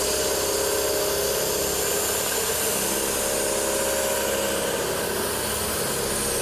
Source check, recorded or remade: recorded